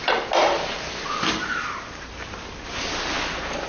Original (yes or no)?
yes